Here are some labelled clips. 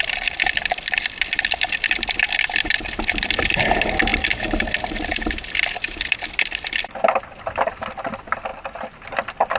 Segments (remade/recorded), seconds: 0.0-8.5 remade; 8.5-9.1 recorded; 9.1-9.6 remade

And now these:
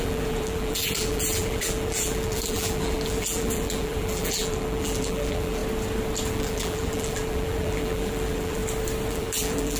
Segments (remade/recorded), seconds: 0.0-5.6 remade; 5.6-6.3 recorded; 6.3-8.6 remade; 8.6-9.1 recorded; 9.1-9.8 remade

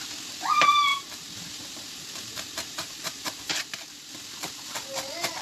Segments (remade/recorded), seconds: 0.0-0.9 recorded; 0.9-4.1 remade; 4.1-5.4 recorded

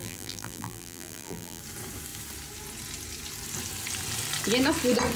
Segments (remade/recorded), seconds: 0.0-1.6 remade; 1.6-5.2 recorded

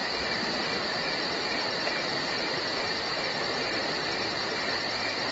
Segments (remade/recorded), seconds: 0.0-3.2 remade; 3.2-5.3 recorded

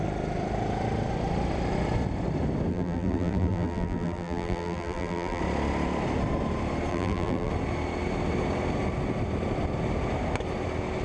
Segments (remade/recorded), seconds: 0.0-2.7 recorded; 2.7-5.4 remade; 5.4-6.9 recorded; 6.9-7.5 remade; 7.5-11.0 recorded